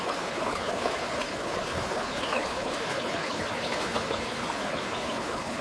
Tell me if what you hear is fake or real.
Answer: fake